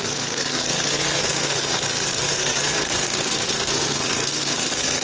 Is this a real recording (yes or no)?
no